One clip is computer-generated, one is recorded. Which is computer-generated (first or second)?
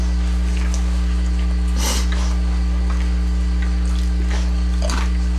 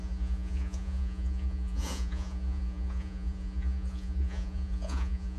second